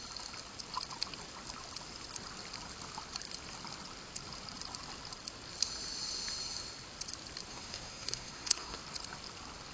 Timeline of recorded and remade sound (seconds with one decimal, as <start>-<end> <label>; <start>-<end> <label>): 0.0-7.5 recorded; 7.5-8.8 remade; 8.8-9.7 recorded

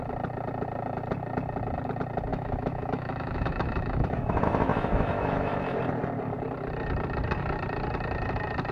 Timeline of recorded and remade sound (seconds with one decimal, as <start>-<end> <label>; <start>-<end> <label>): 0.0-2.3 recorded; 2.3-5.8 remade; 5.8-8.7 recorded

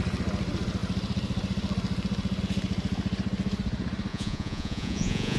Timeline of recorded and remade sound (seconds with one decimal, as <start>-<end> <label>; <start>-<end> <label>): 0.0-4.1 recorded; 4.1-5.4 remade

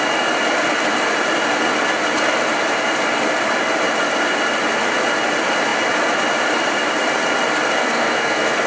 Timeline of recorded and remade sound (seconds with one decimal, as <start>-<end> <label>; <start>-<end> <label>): 0.0-7.8 recorded; 7.8-8.7 remade